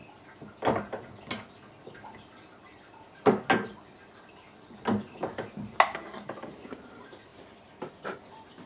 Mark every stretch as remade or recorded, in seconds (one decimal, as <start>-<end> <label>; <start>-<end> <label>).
0.0-8.7 recorded